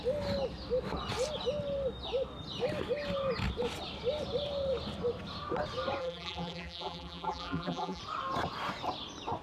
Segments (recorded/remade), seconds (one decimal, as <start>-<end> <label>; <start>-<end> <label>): 0.0-6.0 recorded; 6.0-8.0 remade; 8.0-9.4 recorded